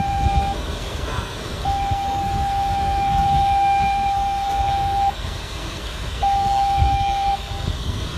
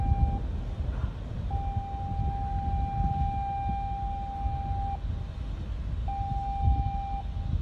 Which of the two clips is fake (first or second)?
first